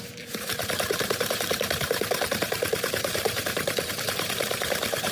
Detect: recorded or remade remade